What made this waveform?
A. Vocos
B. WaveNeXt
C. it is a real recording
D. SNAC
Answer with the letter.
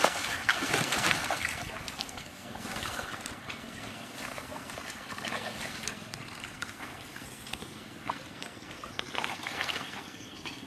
D